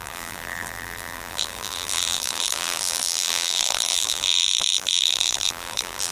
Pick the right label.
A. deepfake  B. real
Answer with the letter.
A